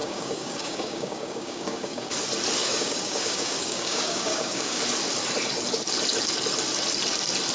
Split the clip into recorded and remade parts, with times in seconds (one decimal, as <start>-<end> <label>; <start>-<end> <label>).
0.0-2.1 remade; 2.1-2.6 recorded; 2.6-4.8 remade; 4.8-7.5 recorded